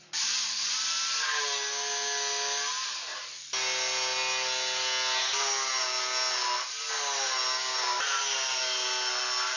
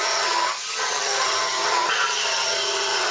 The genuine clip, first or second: first